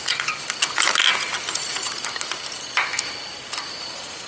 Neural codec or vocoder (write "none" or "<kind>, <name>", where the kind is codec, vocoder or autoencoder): none